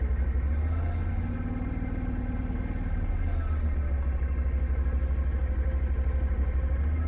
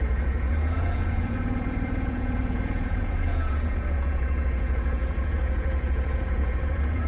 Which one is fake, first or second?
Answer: second